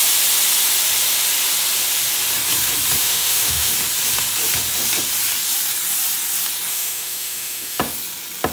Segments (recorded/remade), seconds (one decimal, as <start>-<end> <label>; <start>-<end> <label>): 0.0-3.0 recorded; 3.0-3.7 remade; 3.7-6.7 recorded; 6.7-7.8 remade; 7.8-8.5 recorded